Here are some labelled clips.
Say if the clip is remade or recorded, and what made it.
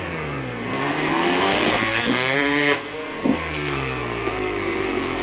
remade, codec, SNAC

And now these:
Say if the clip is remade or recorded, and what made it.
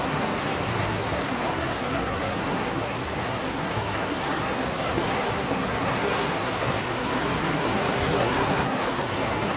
remade, codec, SNAC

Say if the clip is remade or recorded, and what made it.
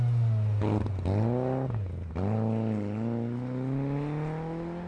recorded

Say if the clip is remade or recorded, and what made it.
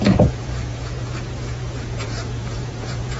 remade, vocoder, Vocos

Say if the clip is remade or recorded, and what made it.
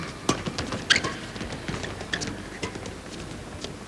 recorded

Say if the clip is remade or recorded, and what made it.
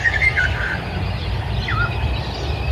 recorded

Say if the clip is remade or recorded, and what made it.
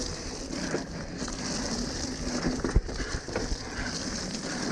recorded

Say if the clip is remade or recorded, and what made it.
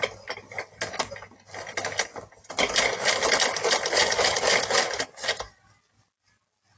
recorded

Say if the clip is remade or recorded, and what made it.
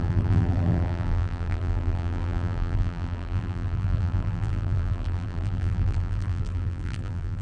remade, vocoder, BigVGAN v2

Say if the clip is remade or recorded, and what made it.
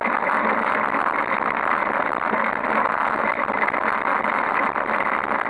recorded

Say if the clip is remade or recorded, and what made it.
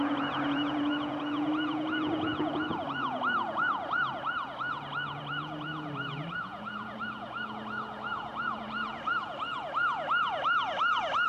remade, vocoder, Vocos